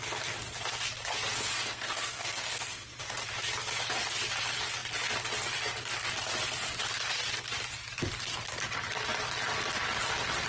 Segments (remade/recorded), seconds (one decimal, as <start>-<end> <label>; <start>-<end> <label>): 0.0-1.5 recorded; 1.5-3.0 remade; 3.0-10.5 recorded